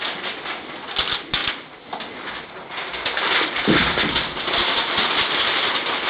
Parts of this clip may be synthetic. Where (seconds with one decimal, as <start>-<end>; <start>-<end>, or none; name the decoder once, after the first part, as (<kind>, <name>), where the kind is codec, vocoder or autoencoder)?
none

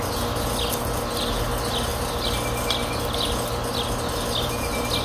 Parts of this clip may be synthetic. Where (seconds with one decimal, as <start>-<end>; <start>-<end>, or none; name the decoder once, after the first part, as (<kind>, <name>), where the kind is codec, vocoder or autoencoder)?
none

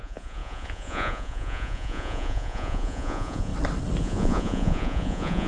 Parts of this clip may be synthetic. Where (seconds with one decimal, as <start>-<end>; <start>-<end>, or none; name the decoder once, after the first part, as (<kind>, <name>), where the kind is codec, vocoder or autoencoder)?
0.0-3.5 (vocoder, Vocos); 4.0-5.5

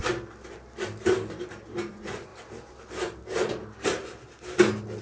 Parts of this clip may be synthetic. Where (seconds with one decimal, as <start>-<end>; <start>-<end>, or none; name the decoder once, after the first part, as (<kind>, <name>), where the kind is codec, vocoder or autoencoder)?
1.9-2.3 (vocoder, Vocos)

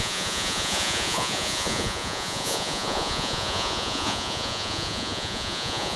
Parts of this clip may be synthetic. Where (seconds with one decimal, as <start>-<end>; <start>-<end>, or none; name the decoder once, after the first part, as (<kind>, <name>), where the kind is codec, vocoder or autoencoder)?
0.0-6.0 (vocoder, Vocos)